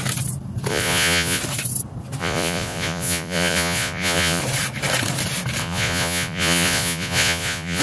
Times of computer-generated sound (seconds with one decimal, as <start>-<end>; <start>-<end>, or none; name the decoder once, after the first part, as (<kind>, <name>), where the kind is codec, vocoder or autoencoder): 0.7-1.4 (vocoder, Vocos); 2.2-4.4; 5.6-7.8